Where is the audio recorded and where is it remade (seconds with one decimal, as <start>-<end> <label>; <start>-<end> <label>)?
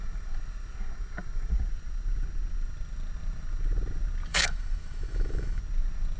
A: 0.0-4.3 recorded; 4.3-5.6 remade; 5.6-6.2 recorded